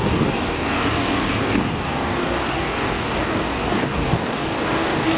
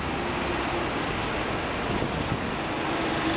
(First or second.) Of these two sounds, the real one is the second